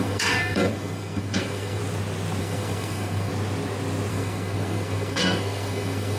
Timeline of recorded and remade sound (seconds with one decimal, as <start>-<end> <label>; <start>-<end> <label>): 0.0-1.8 remade; 1.8-2.4 recorded; 2.4-3.3 remade; 3.3-4.1 recorded; 4.1-6.2 remade